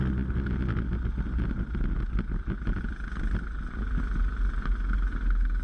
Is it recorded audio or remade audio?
recorded